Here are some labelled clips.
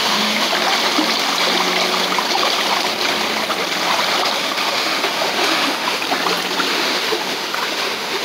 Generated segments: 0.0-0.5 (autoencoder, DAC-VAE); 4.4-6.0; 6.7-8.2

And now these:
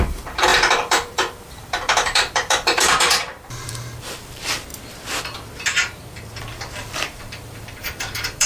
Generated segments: 0.0-4.7 (vocoder, BigVGAN v2); 6.4-8.5

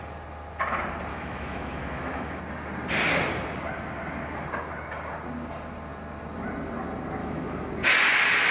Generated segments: 1.1-2.4 (autoencoder, DAC-VAE); 7.2-7.7

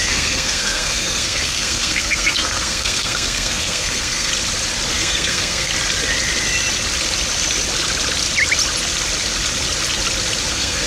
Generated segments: 0.0-4.3 (codec, SNAC); 4.9-5.7; 10.5-10.9

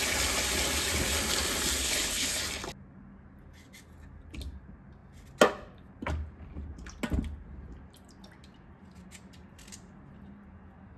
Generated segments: 1.8-2.4 (codec, HILCodec)

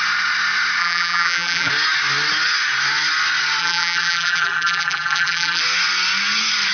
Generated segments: 0.8-1.7 (vocoder, BigVGAN v2); 3.6-5.6